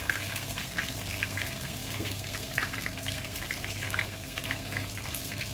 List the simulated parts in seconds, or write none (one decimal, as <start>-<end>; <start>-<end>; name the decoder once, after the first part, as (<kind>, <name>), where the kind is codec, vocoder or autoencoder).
0.0-5.5 (codec, SNAC)